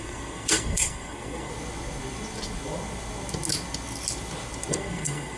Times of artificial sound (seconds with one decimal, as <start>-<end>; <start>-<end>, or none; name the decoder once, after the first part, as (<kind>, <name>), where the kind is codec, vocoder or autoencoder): 0.0-1.5 (codec, SNAC); 4.7-5.4